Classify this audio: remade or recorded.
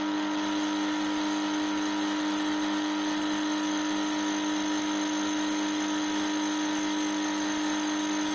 recorded